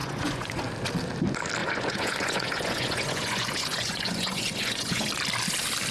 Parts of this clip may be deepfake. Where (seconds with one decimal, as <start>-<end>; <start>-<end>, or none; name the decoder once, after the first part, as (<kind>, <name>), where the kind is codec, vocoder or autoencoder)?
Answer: 0.0-0.6 (vocoder, Vocos); 1.6-5.1